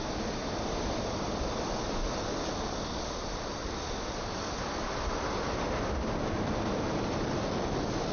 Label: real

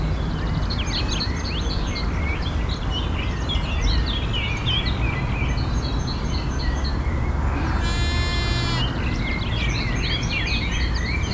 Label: real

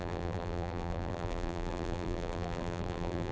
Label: fake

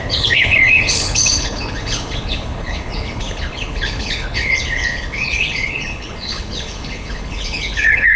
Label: fake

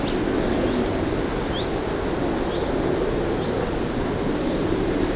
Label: real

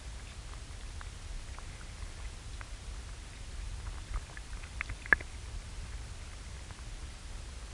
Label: real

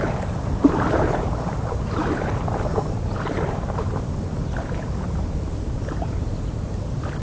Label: fake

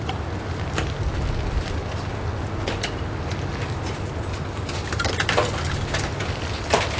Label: real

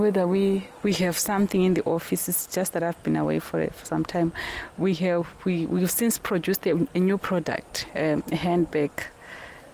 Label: real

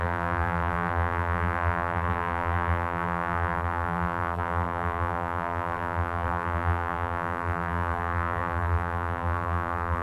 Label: fake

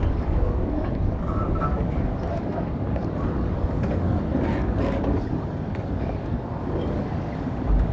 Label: fake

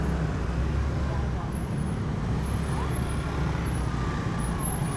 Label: real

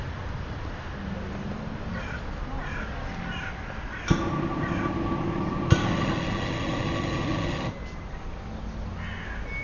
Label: real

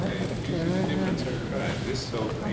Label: fake